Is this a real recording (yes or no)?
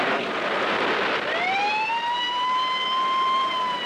yes